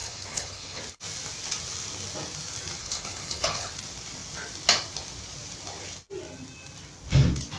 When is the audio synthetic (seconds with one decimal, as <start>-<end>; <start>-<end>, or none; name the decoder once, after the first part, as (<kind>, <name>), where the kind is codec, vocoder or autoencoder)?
0.0-0.8 (codec, HILCodec); 2.8-3.7

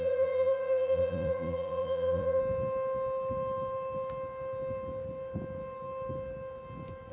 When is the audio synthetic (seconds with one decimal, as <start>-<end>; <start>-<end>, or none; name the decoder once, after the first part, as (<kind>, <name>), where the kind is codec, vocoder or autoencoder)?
0.0-2.4 (vocoder, Vocos)

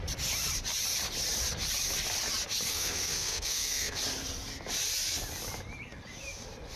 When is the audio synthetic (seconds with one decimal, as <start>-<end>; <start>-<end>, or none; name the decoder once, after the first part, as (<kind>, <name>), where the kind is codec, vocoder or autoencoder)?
2.7-4.0 (codec, SNAC)

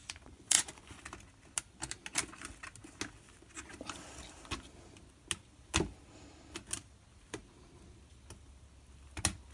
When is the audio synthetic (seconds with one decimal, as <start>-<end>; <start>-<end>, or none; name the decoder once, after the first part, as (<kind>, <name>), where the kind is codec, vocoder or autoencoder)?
0.0-1.0 (vocoder, Vocos)

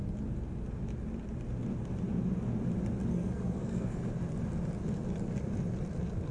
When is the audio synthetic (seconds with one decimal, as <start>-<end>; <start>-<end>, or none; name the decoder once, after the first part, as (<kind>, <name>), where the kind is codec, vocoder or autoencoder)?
3.1-4.1 (codec, SNAC)

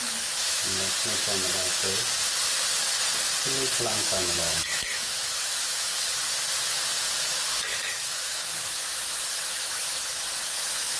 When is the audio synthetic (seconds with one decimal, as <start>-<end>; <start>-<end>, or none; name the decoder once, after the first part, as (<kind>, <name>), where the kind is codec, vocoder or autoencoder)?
0.0-0.6 (autoencoder, DAC-VAE); 3.8-5.9; 7.2-11.0

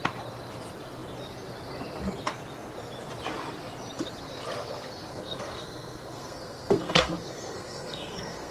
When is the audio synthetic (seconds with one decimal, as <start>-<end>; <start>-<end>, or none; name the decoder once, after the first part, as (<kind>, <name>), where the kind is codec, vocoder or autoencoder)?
5.1-8.5 (codec, SNAC)

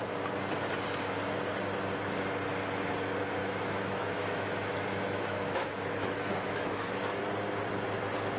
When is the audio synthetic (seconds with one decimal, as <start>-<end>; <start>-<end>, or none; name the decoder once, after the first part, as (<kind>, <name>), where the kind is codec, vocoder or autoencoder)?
3.4-7.2 (autoencoder, DAC-VAE)